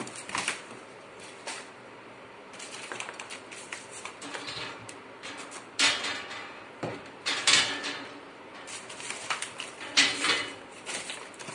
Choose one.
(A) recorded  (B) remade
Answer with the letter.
B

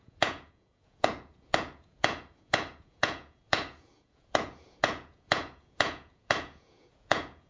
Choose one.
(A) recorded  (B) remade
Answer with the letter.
B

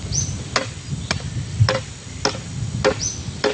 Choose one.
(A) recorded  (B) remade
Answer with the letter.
A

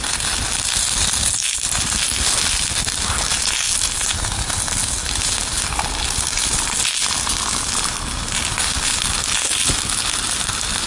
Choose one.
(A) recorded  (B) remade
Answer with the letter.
A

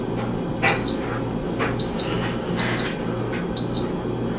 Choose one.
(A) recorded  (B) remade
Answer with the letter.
A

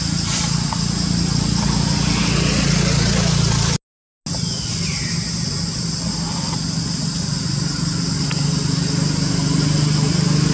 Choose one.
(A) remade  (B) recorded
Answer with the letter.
B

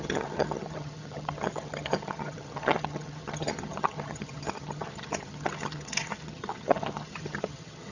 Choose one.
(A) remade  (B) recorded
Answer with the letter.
A